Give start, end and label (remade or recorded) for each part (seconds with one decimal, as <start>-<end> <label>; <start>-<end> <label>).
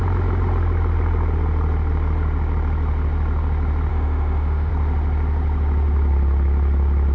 0.0-3.9 recorded; 3.9-4.7 remade; 4.7-7.1 recorded